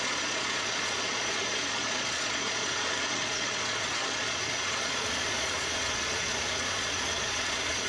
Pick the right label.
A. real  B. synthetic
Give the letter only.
B